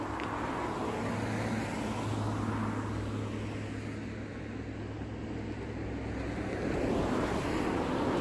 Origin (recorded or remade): recorded